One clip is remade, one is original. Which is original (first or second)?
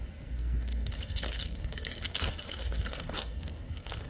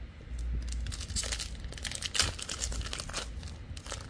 second